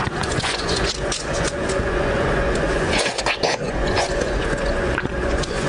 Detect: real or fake fake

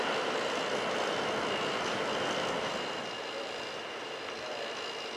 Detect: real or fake real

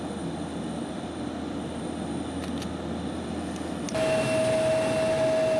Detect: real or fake real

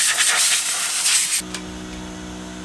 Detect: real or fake real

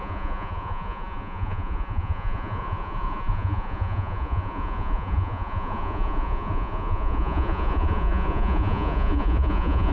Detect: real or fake fake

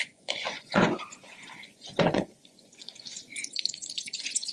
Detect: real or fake fake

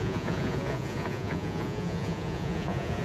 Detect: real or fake fake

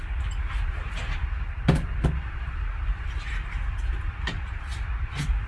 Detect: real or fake real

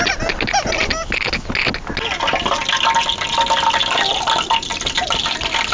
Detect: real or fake real